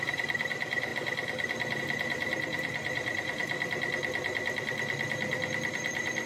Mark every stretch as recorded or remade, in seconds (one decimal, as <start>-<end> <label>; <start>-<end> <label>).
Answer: 0.0-0.9 remade; 0.9-1.8 recorded; 1.8-3.4 remade; 3.4-5.7 recorded; 5.7-6.3 remade